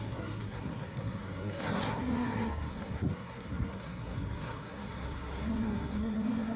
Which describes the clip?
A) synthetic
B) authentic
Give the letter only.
A